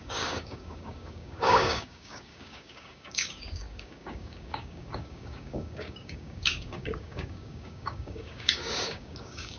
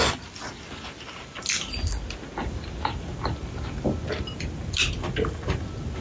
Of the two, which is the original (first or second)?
second